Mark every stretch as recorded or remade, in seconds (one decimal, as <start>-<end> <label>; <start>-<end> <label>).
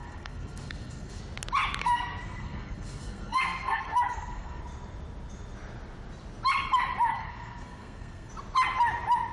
0.0-1.2 remade; 1.2-1.8 recorded; 1.8-4.6 remade; 4.6-7.1 recorded; 7.1-8.3 remade; 8.3-9.3 recorded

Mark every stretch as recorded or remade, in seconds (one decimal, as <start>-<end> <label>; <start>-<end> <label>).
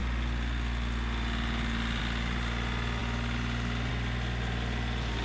0.0-5.2 recorded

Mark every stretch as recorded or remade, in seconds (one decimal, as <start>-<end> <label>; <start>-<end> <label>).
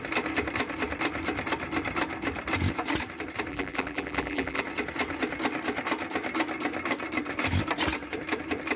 0.0-3.5 recorded; 3.5-4.6 remade; 4.6-8.8 recorded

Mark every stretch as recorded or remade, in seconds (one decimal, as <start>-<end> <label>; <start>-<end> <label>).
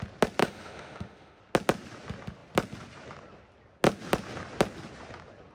0.0-0.4 recorded; 0.4-1.4 remade; 1.4-5.5 recorded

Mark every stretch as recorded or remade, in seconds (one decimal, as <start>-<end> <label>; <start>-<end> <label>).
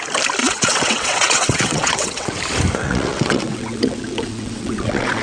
0.0-0.4 recorded; 0.4-2.4 remade; 2.4-2.8 recorded; 2.8-5.2 remade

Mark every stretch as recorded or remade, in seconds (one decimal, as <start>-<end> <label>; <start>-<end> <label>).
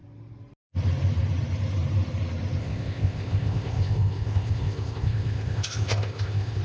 0.0-2.6 recorded; 2.6-6.6 remade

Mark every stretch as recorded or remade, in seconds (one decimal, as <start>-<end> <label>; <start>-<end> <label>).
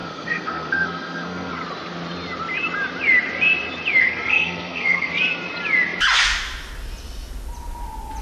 0.0-1.5 remade; 1.5-4.0 recorded; 4.0-5.1 remade; 5.1-8.2 recorded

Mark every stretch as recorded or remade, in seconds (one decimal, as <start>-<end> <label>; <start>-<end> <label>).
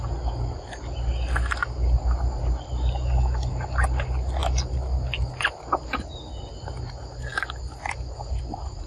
0.0-8.9 recorded